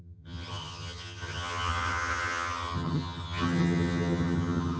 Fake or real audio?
fake